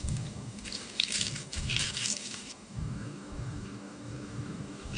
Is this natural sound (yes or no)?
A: no